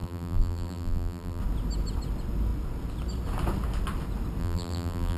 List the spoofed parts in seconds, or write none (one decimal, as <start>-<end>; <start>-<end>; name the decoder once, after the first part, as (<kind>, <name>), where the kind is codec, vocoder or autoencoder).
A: 0.0-1.4 (vocoder, BigVGAN v2); 4.4-5.2